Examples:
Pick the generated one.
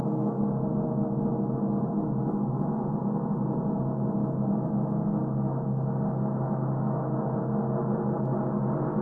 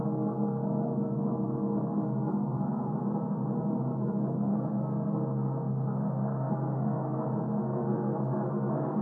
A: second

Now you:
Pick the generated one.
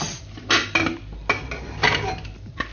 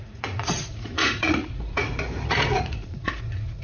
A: second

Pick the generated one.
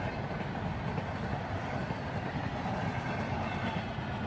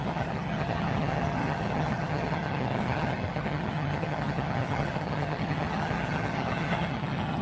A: second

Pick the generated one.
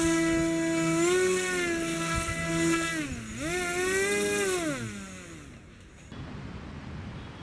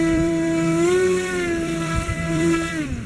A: second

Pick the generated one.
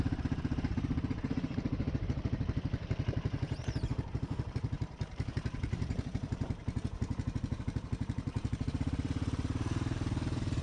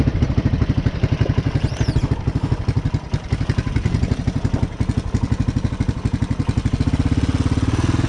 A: first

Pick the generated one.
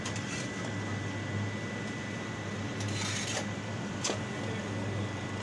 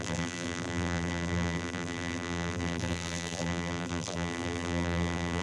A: second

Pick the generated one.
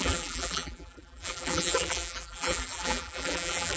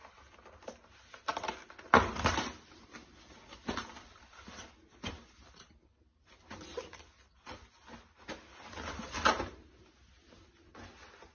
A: first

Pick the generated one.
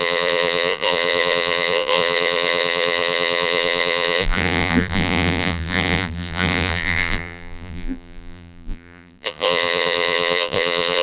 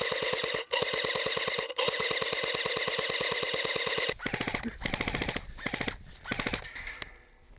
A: first